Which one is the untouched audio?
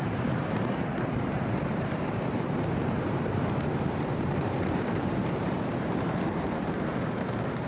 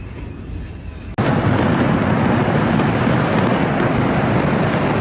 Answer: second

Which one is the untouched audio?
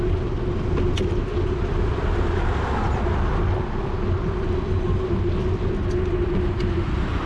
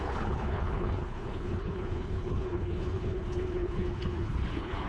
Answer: first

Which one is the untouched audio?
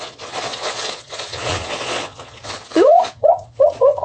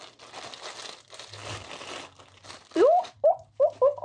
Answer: second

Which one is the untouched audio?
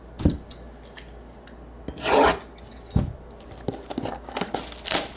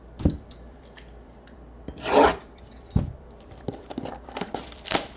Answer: first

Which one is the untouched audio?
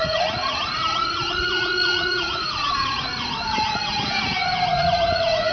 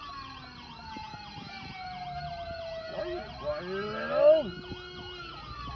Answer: second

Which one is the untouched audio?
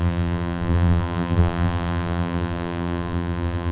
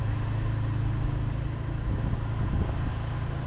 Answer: second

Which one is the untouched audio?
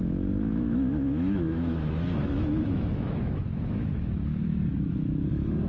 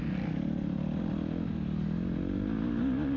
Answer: second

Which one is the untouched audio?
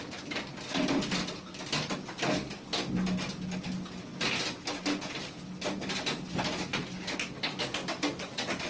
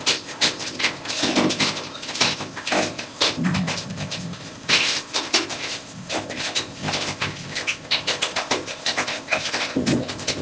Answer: first